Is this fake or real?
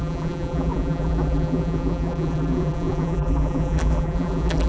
fake